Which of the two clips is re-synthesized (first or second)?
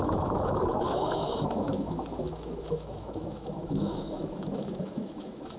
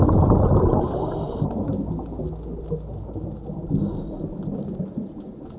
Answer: first